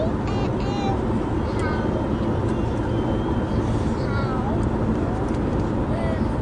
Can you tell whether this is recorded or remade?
recorded